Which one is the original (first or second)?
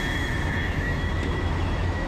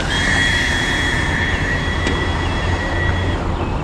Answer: second